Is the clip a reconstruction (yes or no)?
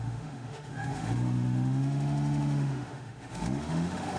yes